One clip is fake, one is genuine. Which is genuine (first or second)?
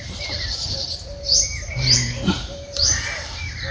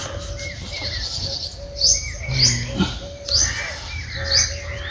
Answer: second